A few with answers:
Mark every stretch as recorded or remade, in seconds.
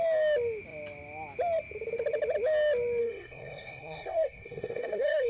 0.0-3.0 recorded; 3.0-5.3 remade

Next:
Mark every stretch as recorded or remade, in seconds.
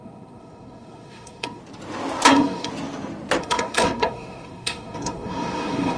0.0-1.6 remade; 1.6-2.3 recorded; 2.3-2.7 remade; 2.7-3.4 recorded; 3.4-6.0 remade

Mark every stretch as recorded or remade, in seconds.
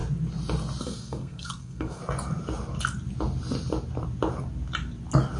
0.0-0.8 recorded; 0.8-2.0 remade; 2.0-5.4 recorded